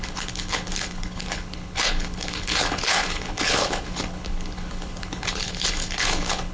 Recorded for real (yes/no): no